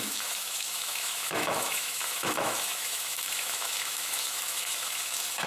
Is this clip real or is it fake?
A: fake